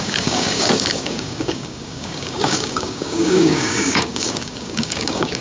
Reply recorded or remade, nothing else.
remade